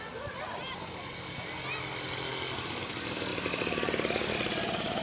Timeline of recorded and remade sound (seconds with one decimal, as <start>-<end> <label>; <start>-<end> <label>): 0.0-5.0 recorded